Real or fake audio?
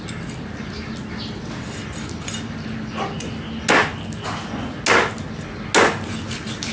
real